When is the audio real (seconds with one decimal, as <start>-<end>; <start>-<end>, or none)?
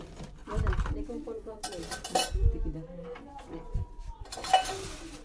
0.0-5.2